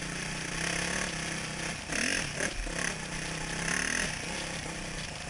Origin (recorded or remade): recorded